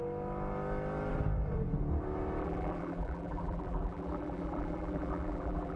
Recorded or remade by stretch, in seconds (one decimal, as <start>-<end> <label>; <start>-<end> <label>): 0.0-2.4 recorded; 2.4-5.8 remade